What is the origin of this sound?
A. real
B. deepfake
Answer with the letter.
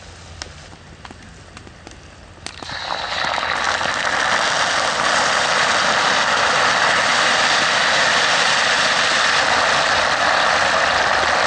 A